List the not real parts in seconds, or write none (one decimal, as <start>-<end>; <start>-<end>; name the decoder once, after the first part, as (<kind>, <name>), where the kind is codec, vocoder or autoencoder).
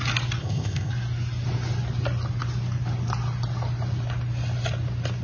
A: 0.4-0.9 (codec, ZipCodec)